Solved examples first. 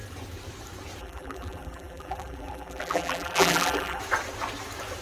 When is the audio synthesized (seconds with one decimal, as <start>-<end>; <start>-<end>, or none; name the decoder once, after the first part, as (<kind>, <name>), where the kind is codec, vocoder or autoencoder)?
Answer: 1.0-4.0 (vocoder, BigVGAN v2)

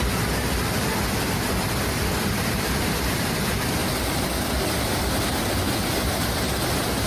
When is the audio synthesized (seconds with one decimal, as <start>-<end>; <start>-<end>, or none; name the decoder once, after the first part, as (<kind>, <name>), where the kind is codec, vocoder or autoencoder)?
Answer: none

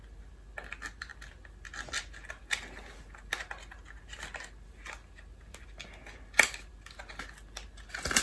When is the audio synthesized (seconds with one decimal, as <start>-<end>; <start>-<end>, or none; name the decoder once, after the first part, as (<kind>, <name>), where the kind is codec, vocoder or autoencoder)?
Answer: none

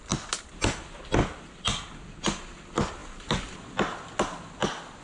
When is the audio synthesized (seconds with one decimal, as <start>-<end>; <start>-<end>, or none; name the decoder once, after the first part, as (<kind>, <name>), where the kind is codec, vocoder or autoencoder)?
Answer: none

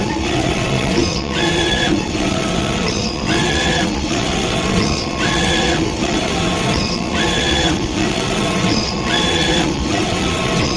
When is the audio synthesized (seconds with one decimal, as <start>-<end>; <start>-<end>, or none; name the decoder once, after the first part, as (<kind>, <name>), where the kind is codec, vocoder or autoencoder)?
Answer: 0.0-10.8 (vocoder, WaveNeXt)